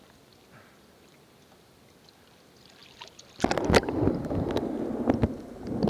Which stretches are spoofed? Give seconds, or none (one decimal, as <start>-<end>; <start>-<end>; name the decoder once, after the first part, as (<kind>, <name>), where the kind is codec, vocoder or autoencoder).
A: none